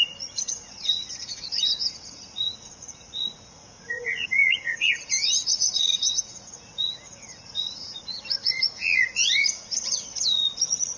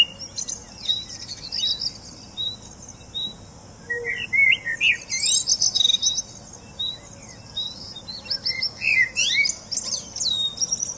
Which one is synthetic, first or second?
first